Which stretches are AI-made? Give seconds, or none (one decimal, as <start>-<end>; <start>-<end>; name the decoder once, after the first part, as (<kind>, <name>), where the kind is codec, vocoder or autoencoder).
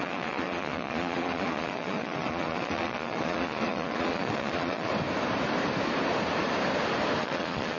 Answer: 0.0-4.9 (vocoder, Vocos); 7.2-7.8